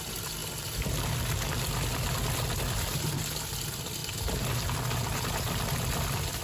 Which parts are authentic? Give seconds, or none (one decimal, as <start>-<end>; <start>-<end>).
0.0-6.4